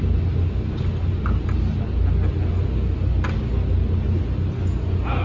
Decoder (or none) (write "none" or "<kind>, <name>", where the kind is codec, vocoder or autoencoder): none